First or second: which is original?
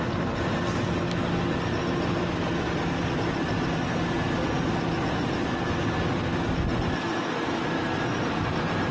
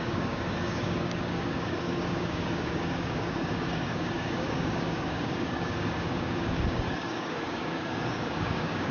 first